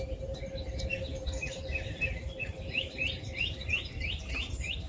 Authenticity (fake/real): fake